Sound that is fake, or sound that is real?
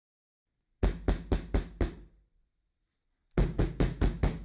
real